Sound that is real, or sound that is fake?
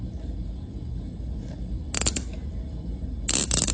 real